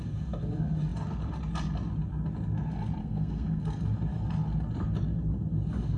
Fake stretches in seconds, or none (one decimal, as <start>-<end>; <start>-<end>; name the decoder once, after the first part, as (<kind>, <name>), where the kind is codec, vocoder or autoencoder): 3.0-3.6 (codec, SNAC)